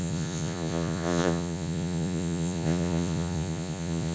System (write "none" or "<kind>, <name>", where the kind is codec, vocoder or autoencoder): vocoder, Vocos